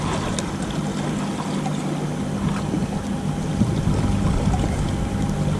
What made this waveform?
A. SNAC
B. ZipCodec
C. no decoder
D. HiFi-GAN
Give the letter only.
C